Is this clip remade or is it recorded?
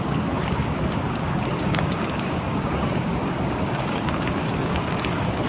remade